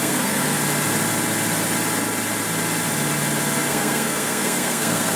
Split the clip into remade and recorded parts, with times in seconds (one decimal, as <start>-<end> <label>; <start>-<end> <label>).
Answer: 0.0-0.6 remade; 0.6-3.7 recorded; 3.7-5.2 remade